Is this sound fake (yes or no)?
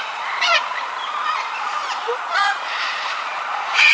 yes